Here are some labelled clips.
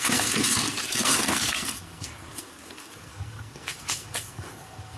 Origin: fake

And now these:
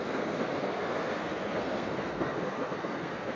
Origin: fake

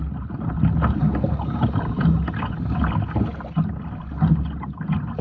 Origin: real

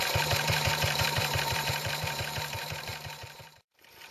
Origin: fake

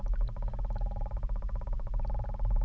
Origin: real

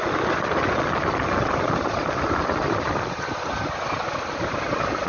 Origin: real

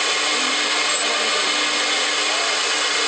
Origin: real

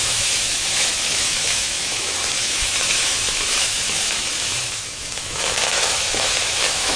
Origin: fake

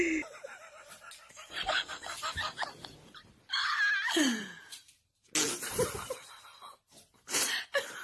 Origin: real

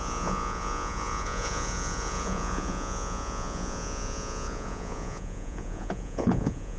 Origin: fake